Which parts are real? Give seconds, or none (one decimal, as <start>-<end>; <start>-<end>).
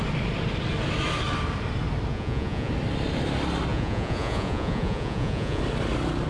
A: 0.0-2.1; 2.7-3.7; 5.6-6.3